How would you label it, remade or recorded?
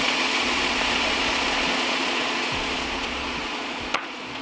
remade